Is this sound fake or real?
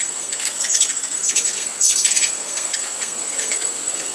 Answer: fake